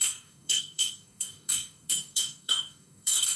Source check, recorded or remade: remade